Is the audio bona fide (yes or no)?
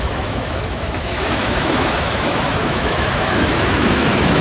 no